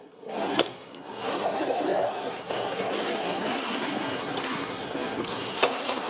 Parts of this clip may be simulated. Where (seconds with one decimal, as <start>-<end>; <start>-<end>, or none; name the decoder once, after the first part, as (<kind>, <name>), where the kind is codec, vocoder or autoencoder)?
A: 0.0-6.1 (codec, SNAC)

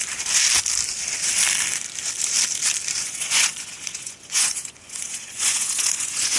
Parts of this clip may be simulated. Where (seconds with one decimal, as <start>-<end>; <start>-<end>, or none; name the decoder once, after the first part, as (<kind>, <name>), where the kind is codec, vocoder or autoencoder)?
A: 3.0-6.4 (vocoder, Vocos)

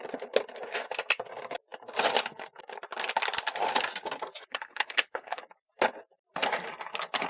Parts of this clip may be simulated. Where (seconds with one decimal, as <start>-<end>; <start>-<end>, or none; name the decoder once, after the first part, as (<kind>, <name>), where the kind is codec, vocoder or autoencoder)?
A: 4.5-5.4 (codec, HILCodec)

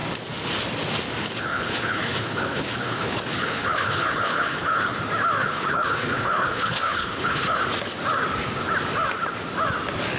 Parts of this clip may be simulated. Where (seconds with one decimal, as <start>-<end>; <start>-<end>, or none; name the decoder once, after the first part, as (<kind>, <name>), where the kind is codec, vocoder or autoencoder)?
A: 1.2-5.0 (codec, HILCodec); 5.4-7.6